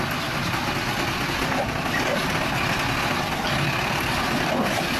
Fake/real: real